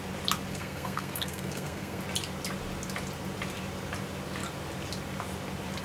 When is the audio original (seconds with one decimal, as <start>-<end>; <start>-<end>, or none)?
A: 0.0-0.5; 2.0-5.8